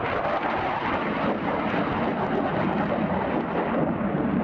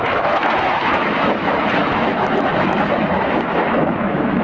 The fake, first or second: second